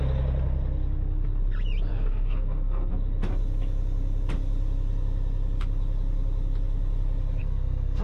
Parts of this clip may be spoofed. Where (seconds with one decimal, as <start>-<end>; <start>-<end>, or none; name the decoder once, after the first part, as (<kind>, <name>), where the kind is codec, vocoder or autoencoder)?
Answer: 1.9-2.9 (codec, SNAC); 7.4-8.0